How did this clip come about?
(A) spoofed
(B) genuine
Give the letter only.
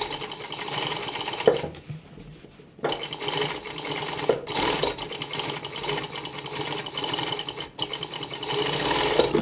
B